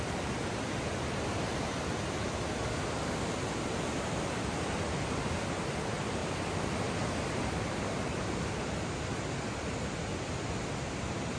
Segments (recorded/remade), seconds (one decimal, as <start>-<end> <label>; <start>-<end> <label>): 0.0-6.2 recorded; 6.2-6.7 remade; 6.7-11.4 recorded